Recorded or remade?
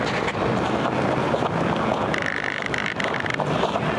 recorded